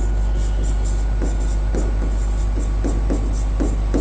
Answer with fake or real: real